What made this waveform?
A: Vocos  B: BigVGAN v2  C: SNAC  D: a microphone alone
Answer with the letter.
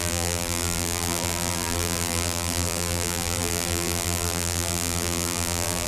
B